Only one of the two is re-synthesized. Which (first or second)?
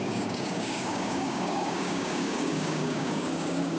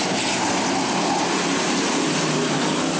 first